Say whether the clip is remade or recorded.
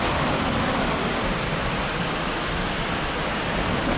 remade